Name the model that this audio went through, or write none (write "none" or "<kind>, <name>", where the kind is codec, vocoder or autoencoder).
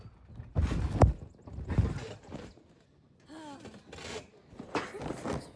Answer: none